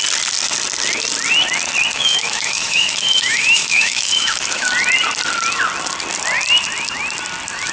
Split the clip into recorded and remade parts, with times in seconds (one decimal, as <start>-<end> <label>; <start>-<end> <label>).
0.0-1.9 recorded; 1.9-4.7 remade; 4.7-7.7 recorded